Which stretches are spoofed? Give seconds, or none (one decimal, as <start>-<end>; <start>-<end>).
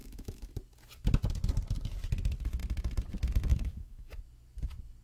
0.0-0.5; 3.5-4.2